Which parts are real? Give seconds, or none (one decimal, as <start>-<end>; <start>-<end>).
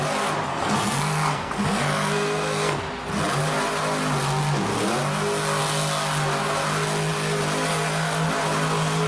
0.0-0.5; 2.8-9.1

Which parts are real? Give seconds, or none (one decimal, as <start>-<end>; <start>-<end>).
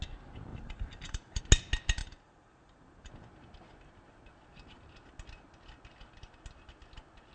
0.0-0.5; 1.4-2.0; 3.1-7.3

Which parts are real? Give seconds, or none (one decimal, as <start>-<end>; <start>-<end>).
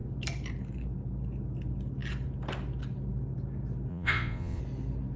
0.0-3.9; 4.6-5.2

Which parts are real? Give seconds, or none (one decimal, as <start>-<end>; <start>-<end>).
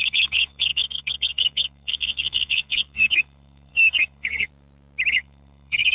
4.5-5.1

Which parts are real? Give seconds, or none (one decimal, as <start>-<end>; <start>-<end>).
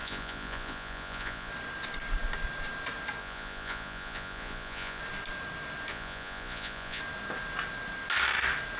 1.5-3.2; 5.0-5.9; 7.0-8.8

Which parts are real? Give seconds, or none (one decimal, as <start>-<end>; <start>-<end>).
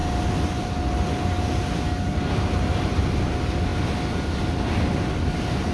0.0-5.7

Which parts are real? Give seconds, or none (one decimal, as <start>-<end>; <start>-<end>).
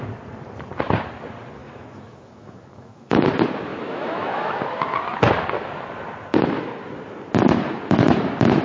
0.0-1.6; 3.3-3.7; 4.5-8.6